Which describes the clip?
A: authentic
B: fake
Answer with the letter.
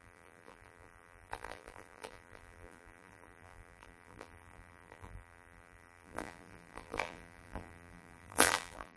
B